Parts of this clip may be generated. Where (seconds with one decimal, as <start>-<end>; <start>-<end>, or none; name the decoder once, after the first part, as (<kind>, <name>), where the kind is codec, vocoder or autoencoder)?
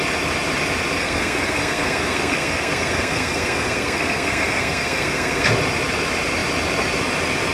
1.0-5.5 (codec, SNAC)